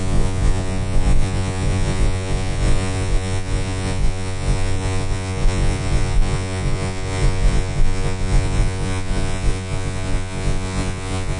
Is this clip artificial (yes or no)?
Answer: yes